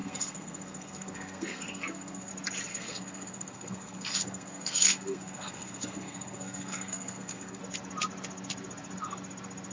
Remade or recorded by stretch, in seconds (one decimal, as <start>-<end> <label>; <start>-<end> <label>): 0.0-2.3 remade; 2.3-2.7 recorded; 2.7-7.6 remade; 7.6-9.7 recorded